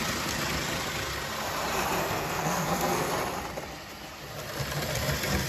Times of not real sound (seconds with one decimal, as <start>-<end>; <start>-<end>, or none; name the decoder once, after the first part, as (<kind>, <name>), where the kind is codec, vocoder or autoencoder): 2.0-3.1 (codec, SNAC)